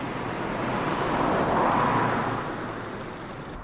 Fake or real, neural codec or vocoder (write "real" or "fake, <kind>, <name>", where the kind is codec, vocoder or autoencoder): real